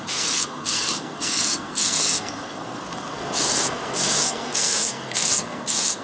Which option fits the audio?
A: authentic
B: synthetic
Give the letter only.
B